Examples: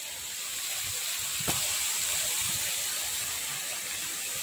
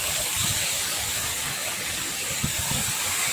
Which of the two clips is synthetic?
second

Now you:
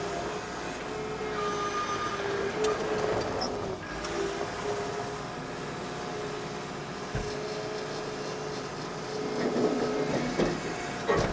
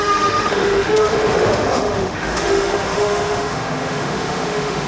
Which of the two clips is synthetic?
second